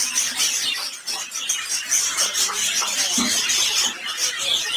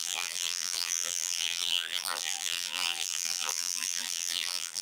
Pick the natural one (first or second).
first